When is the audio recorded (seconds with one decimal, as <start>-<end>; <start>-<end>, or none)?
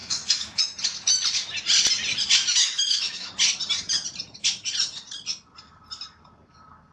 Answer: 0.6-2.6; 3.3-6.9